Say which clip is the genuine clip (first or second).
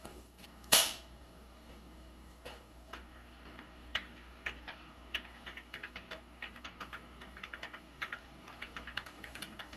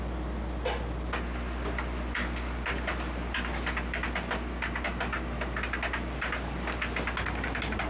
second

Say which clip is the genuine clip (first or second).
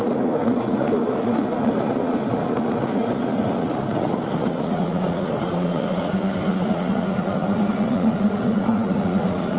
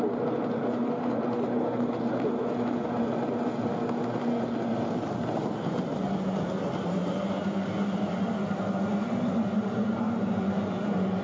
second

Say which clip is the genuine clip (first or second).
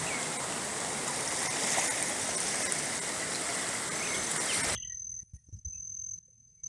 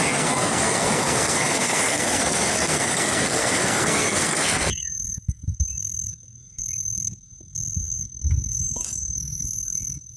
first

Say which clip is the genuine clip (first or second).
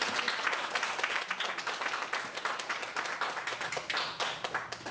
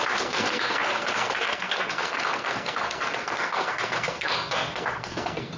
first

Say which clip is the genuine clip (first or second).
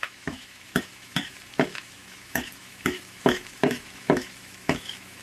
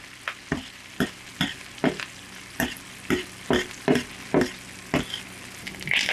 second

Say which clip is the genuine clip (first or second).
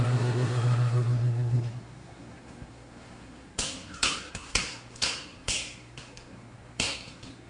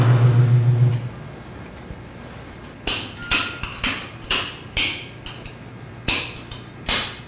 second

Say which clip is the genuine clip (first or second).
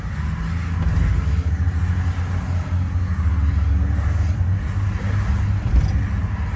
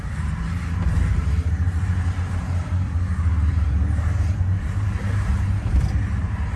first